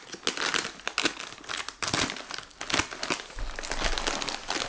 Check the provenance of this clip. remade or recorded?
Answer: recorded